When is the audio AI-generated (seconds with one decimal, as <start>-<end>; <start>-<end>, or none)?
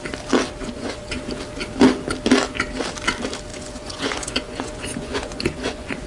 0.6-1.3; 3.5-6.1